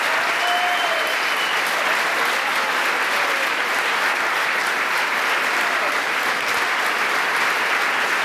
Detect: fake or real real